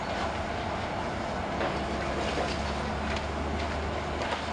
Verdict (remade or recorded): recorded